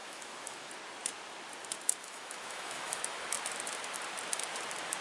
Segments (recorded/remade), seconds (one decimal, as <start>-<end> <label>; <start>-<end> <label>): 0.0-0.7 remade; 0.7-2.0 recorded; 2.0-3.0 remade; 3.0-5.0 recorded